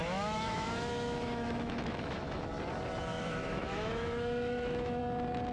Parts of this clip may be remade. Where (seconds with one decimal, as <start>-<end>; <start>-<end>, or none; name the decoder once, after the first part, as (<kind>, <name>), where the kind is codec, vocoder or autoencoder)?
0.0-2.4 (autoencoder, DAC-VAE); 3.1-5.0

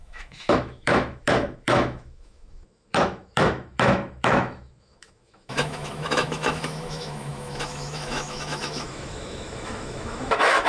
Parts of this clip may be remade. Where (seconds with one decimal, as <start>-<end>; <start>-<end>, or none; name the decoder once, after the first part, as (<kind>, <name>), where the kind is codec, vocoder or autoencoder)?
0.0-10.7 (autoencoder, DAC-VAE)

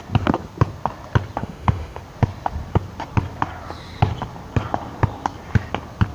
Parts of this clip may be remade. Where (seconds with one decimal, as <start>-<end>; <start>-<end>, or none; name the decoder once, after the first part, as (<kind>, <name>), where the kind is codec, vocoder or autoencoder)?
1.4-2.0 (autoencoder, DAC-VAE)

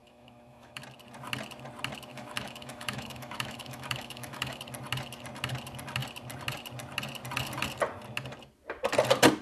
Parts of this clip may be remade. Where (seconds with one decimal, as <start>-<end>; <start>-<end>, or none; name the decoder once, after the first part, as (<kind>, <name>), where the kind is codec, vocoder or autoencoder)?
0.0-0.8 (autoencoder, DAC-VAE); 2.1-4.6